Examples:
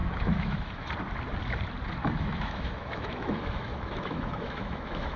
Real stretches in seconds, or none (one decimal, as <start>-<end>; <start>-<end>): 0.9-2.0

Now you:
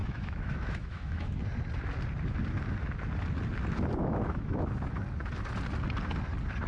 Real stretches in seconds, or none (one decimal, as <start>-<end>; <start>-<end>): 1.4-4.0; 4.7-6.7

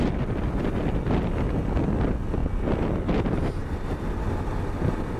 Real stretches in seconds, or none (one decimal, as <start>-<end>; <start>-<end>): 0.0-5.2

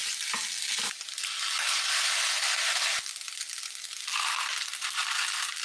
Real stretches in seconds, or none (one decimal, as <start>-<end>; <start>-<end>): 0.0-5.6